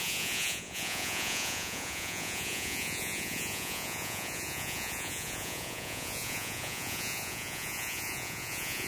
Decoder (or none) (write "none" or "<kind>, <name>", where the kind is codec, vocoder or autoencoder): vocoder, Vocos